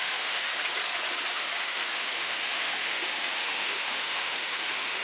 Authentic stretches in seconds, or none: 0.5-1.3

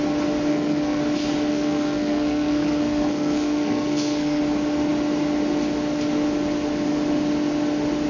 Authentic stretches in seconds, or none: 0.0-0.5; 1.0-1.5; 4.4-8.1

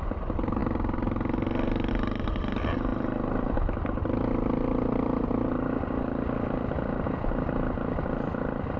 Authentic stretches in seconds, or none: 0.0-8.8

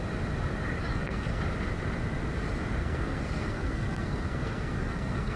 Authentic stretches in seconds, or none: 0.0-0.9; 1.4-2.8